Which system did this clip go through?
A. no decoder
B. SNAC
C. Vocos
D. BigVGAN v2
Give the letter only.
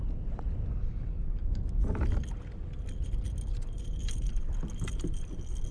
A